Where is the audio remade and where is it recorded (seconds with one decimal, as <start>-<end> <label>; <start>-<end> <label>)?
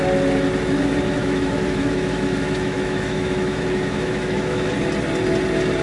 0.0-1.2 recorded; 1.2-4.7 remade; 4.7-5.8 recorded